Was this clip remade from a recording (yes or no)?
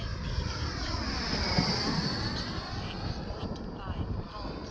no